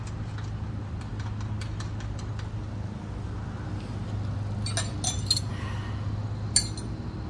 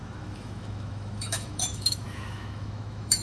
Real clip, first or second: first